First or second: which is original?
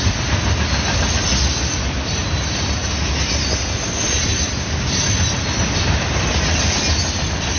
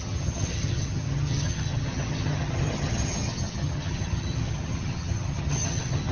first